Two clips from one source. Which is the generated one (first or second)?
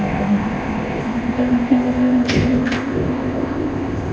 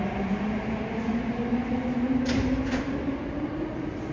first